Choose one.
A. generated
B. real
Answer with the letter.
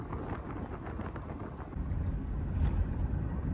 B